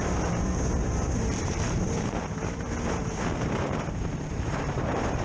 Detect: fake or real fake